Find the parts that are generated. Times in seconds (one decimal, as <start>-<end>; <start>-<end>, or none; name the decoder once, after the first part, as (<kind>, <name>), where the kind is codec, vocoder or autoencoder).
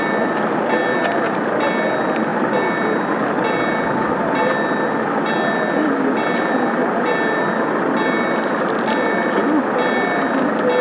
none